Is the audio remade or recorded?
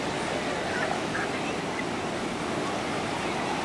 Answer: recorded